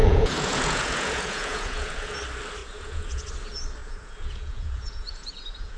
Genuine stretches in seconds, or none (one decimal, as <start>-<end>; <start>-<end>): 2.1-2.6; 3.3-3.8